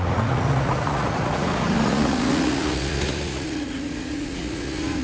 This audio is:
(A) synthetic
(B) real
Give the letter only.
A